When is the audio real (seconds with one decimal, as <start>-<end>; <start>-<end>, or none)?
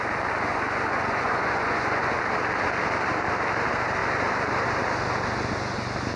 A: 0.0-0.5; 2.1-6.2